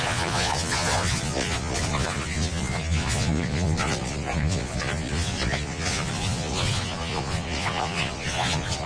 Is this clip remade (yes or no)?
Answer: yes